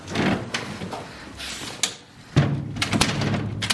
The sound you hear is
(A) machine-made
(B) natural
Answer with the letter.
B